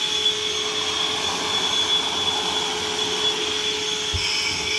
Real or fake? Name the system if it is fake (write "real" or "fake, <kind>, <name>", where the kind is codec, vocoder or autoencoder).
real